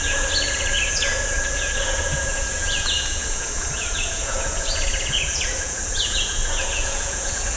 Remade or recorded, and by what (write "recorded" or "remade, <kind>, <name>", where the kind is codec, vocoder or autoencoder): remade, vocoder, Vocos